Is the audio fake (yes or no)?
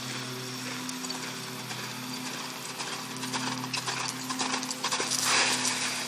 no